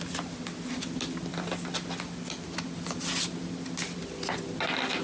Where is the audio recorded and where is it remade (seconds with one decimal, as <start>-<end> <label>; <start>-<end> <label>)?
0.0-5.0 recorded